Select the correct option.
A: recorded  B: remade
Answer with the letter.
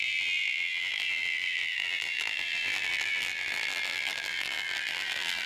B